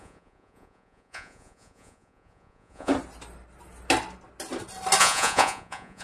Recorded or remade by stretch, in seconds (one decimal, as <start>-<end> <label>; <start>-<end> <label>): 0.0-2.9 remade; 2.9-5.0 recorded; 5.0-6.0 remade